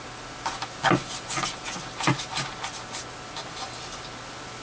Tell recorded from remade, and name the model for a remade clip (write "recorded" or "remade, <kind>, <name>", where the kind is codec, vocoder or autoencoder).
recorded